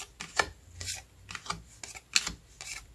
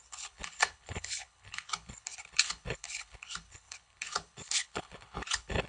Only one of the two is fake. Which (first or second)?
second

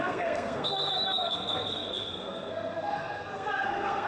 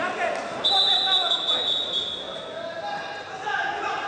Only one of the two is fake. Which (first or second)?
first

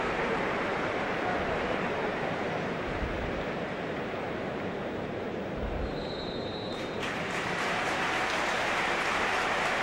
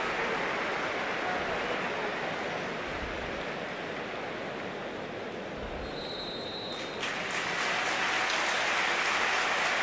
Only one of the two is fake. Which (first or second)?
first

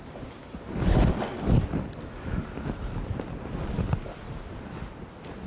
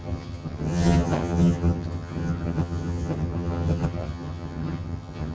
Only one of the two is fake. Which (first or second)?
second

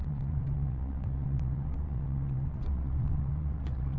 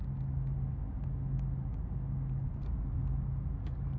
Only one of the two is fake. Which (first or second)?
first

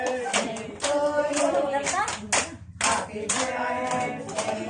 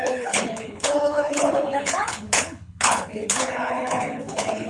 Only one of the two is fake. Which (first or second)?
second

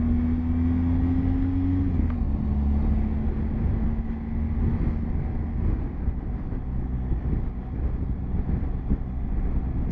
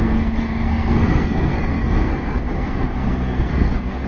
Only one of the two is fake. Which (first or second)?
second